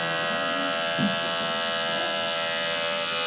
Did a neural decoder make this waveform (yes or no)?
no